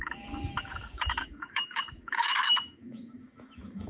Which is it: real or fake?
fake